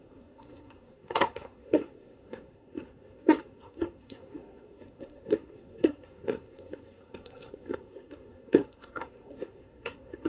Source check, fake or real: fake